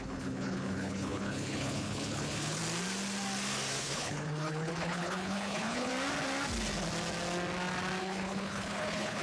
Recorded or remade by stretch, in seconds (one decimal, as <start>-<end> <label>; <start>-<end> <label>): 0.0-2.6 remade; 2.6-3.8 recorded; 3.8-5.9 remade; 5.9-8.0 recorded; 8.0-9.2 remade